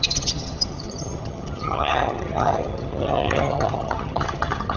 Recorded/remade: remade